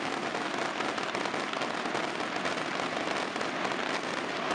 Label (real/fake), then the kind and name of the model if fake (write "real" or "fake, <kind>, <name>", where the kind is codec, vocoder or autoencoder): real